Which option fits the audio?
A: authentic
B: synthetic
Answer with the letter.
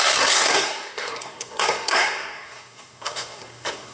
B